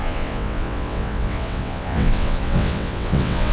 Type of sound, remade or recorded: remade